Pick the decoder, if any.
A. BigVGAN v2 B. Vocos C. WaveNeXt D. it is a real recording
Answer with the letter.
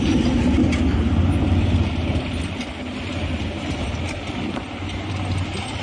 D